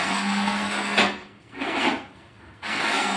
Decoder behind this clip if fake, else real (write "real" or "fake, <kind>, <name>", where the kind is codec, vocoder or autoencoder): fake, codec, SNAC